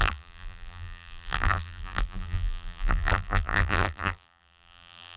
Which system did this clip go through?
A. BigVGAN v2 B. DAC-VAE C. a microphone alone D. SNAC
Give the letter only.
A